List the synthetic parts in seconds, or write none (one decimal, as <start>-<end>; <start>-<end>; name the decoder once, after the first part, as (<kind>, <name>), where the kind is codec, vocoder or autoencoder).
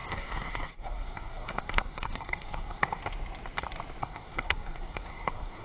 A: 0.0-3.0 (codec, SNAC); 4.0-5.6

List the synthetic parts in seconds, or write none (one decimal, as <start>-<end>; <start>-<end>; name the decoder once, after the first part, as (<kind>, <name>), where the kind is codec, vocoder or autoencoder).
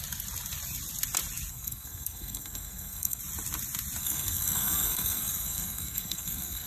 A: 1.5-3.2 (codec, SNAC); 4.0-6.7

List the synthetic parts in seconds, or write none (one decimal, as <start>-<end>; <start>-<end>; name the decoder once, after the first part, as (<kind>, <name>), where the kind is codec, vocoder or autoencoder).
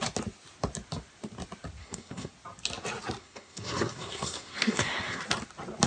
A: 1.8-2.3 (codec, SNAC); 3.2-5.2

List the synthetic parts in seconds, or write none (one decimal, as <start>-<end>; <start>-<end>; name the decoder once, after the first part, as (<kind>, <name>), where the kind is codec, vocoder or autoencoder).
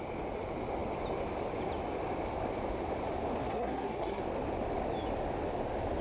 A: 3.4-4.2 (codec, SNAC)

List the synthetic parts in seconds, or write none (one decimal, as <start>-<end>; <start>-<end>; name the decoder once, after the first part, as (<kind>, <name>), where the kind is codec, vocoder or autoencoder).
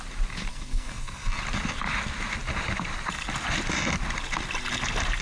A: 0.5-1.4 (codec, SNAC)